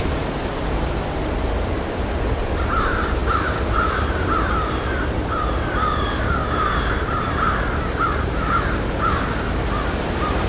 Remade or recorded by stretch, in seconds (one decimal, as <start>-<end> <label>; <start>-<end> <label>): 0.0-10.5 remade